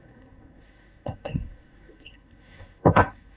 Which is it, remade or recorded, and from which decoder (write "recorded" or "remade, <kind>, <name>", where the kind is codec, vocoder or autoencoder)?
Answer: remade, codec, SNAC